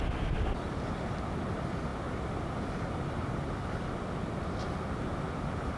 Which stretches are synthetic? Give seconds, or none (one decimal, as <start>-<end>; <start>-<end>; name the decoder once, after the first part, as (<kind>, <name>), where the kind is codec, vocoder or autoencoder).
none

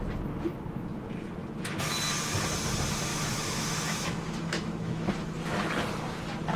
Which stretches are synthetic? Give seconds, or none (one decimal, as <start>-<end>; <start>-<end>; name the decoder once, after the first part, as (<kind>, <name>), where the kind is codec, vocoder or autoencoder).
3.1-5.1 (autoencoder, DAC-VAE)

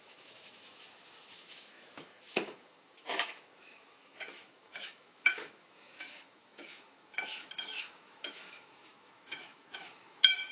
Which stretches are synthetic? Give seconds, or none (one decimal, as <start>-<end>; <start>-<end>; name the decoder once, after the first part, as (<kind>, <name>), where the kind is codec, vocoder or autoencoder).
0.0-10.5 (autoencoder, DAC-VAE)

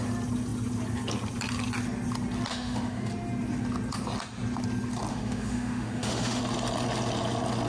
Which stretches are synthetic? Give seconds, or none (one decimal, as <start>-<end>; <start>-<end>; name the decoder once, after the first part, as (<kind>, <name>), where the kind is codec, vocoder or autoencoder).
2.5-3.1 (autoencoder, DAC-VAE); 5.1-6.4

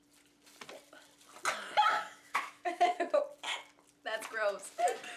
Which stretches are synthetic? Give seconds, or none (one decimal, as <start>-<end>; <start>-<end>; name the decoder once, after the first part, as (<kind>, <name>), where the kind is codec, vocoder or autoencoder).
1.8-3.2 (autoencoder, DAC-VAE)